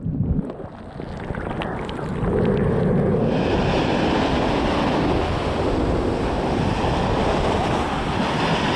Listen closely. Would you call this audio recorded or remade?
recorded